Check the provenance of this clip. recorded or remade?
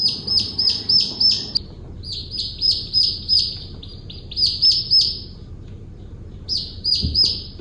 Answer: recorded